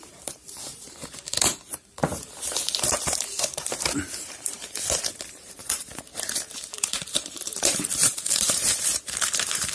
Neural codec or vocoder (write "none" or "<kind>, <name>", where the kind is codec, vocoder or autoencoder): vocoder, BigVGAN v2